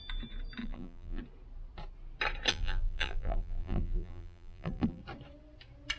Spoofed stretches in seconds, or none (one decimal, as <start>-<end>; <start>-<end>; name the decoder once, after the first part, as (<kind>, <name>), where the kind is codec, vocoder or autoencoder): 0.6-1.2 (vocoder, BigVGAN v2); 2.5-5.0